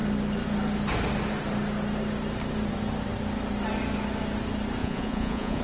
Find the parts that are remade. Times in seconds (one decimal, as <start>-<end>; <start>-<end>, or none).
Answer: 4.8-5.6